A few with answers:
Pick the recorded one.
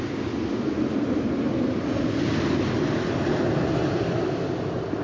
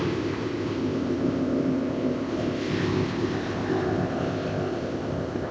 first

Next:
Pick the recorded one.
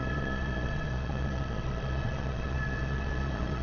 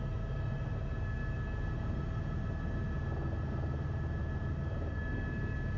second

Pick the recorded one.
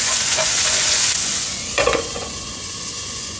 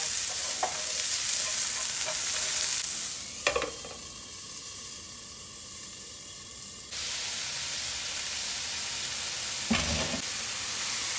second